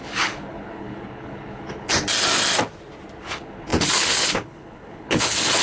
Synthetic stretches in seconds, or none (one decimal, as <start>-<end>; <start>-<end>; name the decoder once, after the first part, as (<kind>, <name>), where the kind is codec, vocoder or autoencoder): 0.0-1.9 (codec, HILCodec); 3.2-5.6